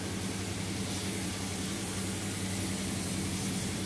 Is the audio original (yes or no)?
no